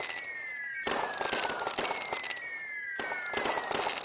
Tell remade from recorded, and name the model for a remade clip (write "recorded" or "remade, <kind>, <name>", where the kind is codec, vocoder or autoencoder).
recorded